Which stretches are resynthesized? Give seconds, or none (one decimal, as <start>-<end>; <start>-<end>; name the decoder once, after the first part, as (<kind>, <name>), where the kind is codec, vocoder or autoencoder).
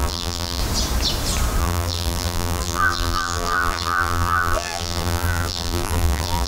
0.0-0.6 (vocoder, BigVGAN v2); 1.6-6.5